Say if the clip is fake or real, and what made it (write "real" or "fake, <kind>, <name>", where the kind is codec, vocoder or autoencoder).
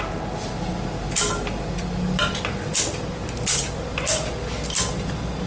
real